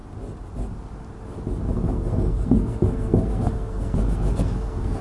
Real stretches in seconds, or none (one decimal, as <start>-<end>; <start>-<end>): 0.0-1.7